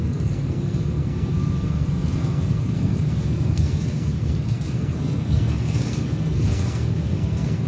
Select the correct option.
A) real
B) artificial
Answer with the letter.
B